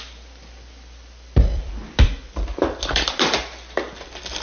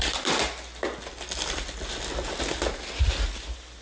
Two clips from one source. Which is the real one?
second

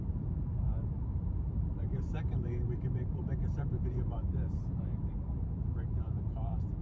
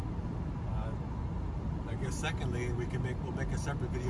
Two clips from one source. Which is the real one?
second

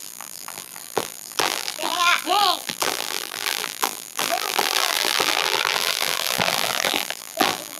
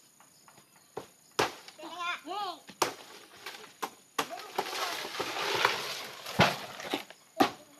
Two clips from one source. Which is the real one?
second